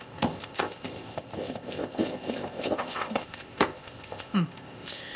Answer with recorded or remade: remade